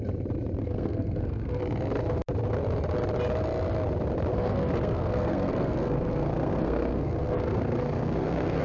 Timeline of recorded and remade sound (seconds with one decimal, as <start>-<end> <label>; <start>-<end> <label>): 0.0-0.6 recorded; 0.6-1.6 remade; 1.6-4.3 recorded; 4.3-8.6 remade